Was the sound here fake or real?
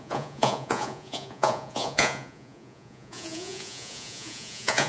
fake